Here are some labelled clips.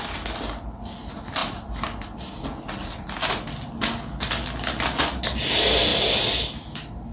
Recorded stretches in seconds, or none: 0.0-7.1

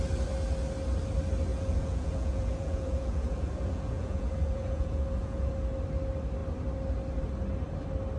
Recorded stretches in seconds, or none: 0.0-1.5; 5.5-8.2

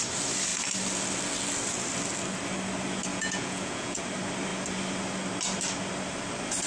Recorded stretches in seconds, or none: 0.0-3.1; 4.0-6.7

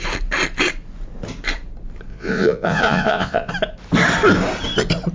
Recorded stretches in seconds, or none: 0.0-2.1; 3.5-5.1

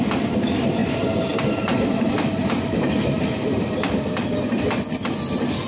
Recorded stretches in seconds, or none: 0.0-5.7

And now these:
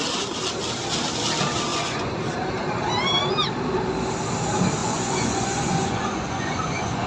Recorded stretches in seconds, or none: 0.0-1.7; 2.2-4.8